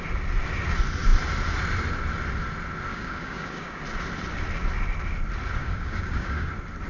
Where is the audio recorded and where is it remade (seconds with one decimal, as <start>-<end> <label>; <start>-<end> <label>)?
0.0-2.9 recorded; 2.9-3.8 remade; 3.8-5.6 recorded; 5.6-6.5 remade; 6.5-6.9 recorded